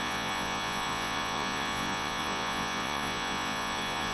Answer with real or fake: fake